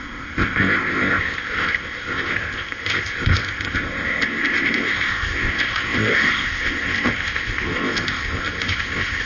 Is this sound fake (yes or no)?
yes